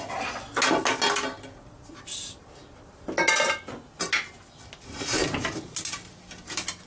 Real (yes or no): yes